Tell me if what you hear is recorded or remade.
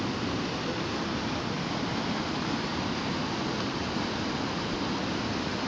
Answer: recorded